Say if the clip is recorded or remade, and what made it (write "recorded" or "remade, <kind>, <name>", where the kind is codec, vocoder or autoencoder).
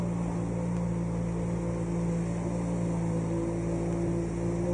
recorded